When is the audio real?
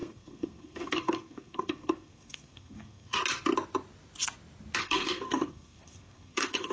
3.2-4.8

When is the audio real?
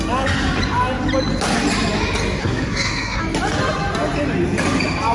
0.0-2.4; 3.2-5.1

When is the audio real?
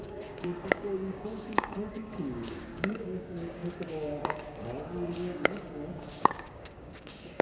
none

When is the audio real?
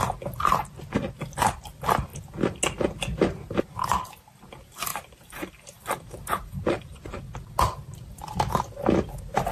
0.0-4.9; 6.6-9.5